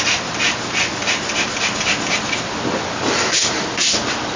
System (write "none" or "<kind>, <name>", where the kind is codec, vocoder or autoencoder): none